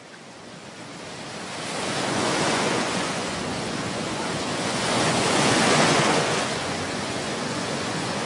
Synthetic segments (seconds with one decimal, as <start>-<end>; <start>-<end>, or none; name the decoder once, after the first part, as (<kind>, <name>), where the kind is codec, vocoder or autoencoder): 0.0-0.9 (vocoder, Vocos); 1.8-8.3